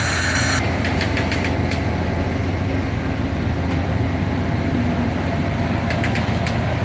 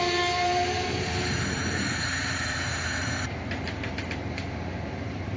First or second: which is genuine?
first